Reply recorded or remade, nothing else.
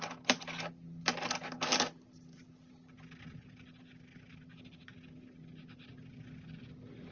recorded